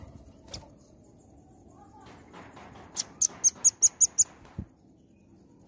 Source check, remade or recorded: recorded